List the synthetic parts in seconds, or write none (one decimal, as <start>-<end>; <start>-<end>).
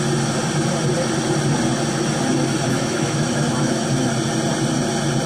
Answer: 2.7-4.1